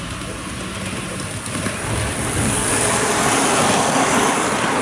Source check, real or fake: real